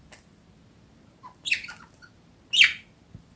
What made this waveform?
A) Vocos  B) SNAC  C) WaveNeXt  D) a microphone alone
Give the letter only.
D